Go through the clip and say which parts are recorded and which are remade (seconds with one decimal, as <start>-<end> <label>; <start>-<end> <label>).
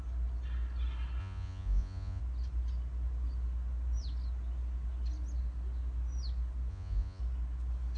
0.0-1.2 recorded; 1.2-2.2 remade; 2.2-6.7 recorded; 6.7-7.2 remade; 7.2-8.0 recorded